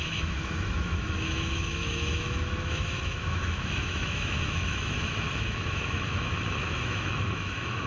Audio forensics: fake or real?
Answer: fake